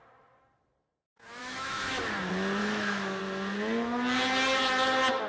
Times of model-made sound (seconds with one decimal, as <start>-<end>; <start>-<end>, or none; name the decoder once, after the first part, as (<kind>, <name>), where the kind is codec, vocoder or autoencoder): 1.4-2.0 (autoencoder, DAC-VAE); 2.6-3.2